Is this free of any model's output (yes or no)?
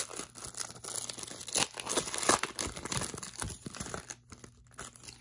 yes